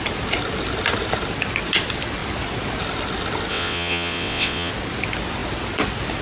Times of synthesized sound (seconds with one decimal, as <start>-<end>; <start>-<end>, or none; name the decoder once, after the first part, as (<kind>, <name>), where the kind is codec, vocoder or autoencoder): 3.5-4.7 (vocoder, WaveNeXt)

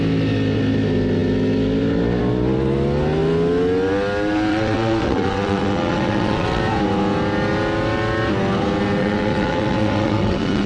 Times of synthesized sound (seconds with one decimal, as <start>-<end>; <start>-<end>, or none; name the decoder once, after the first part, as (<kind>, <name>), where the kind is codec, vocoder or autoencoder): 4.5-6.6 (vocoder, WaveNeXt); 9.0-10.7

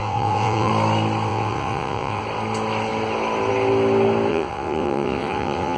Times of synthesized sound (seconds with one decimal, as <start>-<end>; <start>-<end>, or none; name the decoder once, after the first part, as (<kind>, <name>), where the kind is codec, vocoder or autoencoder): 0.0-0.7 (vocoder, WaveNeXt); 1.3-2.2; 4.3-5.8

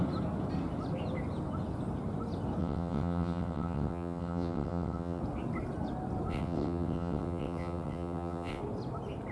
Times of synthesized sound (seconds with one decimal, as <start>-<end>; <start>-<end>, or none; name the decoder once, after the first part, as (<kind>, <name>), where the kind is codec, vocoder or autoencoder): 2.6-5.2 (vocoder, WaveNeXt); 6.3-8.6